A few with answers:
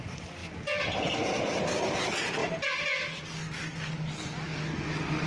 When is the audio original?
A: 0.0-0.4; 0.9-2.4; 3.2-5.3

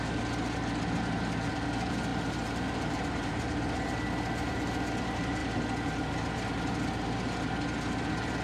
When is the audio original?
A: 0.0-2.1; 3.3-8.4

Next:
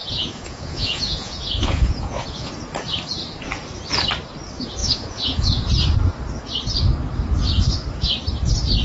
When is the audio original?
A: 2.5-4.8; 5.5-8.8